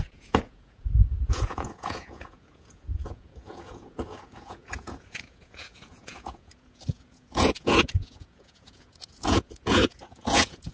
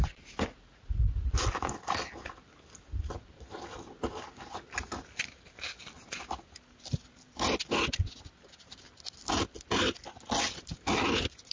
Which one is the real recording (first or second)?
second